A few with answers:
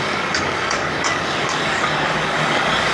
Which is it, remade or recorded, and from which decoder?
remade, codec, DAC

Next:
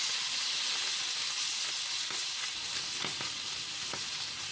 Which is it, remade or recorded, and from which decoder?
recorded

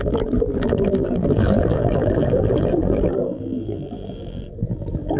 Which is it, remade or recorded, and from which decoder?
remade, vocoder, BigVGAN v2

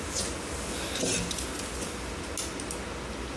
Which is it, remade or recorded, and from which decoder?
recorded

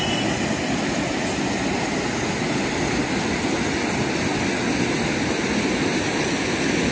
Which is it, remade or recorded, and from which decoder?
recorded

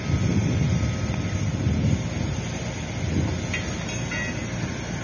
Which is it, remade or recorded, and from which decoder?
recorded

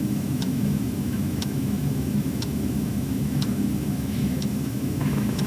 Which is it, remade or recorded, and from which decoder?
remade, autoencoder, DAC-VAE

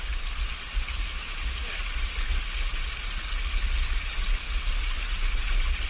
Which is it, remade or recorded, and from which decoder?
recorded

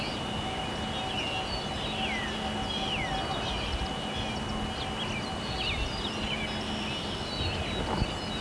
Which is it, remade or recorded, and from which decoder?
recorded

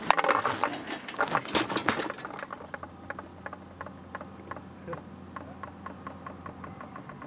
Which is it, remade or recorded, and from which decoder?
recorded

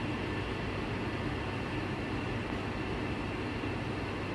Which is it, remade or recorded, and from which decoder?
recorded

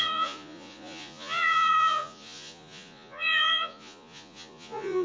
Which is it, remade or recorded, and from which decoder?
remade, vocoder, Vocos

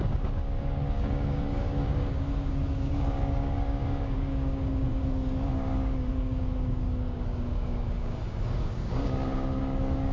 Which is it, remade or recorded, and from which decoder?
remade, codec, DAC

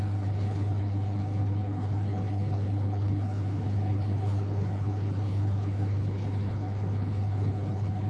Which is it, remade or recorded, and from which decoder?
remade, codec, HILCodec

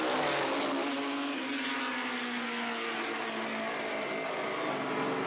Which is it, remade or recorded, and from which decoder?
recorded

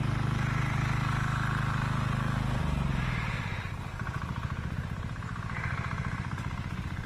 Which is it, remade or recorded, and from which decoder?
recorded